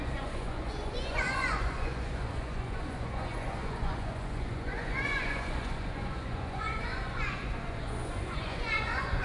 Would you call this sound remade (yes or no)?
yes